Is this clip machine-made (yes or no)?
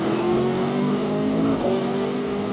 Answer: yes